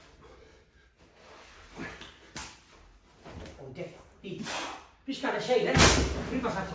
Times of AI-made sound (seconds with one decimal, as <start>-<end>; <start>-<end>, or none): none